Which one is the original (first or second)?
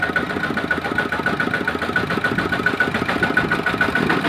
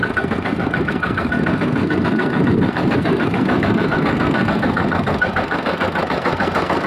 first